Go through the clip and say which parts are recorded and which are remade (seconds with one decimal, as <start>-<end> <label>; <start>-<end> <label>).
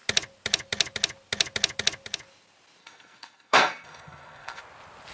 0.0-2.8 recorded; 2.8-4.6 remade; 4.6-5.1 recorded